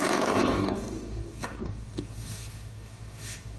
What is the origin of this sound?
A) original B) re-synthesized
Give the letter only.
B